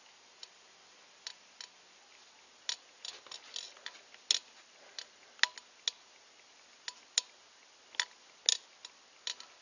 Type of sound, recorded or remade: recorded